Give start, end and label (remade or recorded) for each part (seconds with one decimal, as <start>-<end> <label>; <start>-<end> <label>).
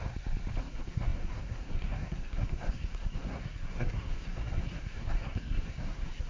0.0-0.6 recorded; 0.6-6.3 remade